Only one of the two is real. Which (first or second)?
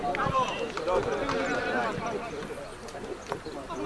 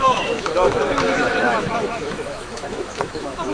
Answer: first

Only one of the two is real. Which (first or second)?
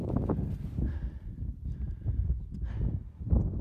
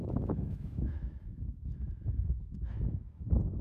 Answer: first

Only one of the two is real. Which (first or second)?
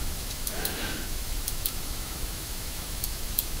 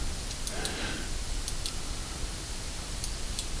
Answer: second